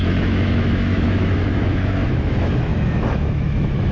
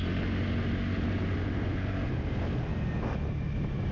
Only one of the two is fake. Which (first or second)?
first